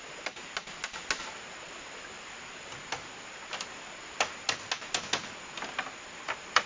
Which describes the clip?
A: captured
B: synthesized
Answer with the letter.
A